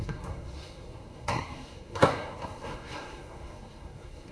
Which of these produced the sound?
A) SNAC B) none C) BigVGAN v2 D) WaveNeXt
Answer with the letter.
A